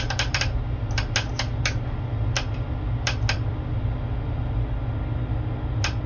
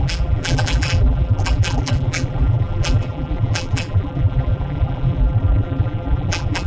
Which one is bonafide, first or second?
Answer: first